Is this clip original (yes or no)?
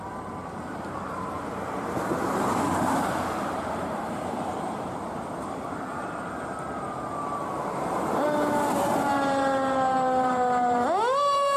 no